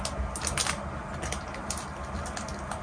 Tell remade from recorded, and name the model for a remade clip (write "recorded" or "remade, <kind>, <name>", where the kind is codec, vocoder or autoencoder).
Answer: recorded